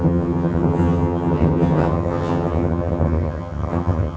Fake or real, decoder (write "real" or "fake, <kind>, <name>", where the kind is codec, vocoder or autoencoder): fake, vocoder, HiFi-GAN